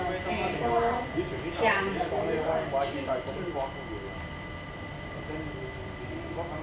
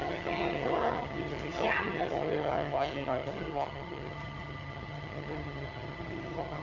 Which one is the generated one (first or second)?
second